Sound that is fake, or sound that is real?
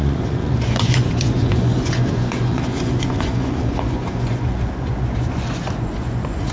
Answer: fake